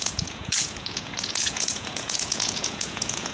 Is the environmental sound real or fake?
fake